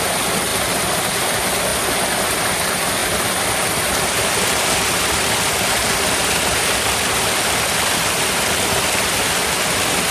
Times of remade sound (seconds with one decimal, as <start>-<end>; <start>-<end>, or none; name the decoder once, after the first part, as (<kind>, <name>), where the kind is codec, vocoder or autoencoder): none